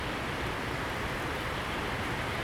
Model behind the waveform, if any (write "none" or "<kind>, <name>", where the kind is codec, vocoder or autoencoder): none